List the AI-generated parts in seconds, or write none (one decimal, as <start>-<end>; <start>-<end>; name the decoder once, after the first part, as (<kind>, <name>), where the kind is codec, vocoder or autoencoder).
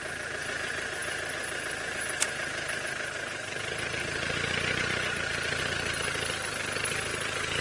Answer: none